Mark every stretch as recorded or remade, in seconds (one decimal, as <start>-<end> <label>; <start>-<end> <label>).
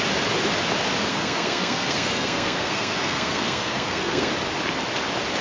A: 0.0-1.1 recorded; 1.1-4.3 remade; 4.3-5.4 recorded